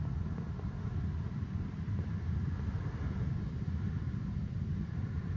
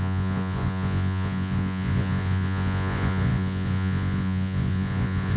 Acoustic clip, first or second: first